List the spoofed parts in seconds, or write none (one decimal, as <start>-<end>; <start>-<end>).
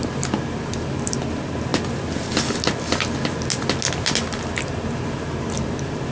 none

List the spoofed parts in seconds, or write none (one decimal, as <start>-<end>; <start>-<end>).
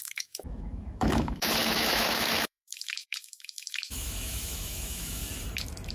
0.0-5.2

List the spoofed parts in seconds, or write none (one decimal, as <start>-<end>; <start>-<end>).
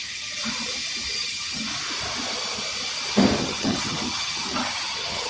0.0-0.4; 1.1-1.6; 3.4-5.3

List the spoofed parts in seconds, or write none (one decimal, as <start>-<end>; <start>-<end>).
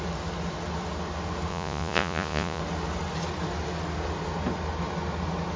1.5-2.6